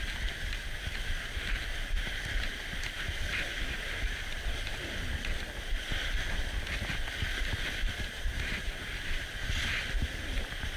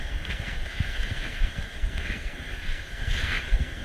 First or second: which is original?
first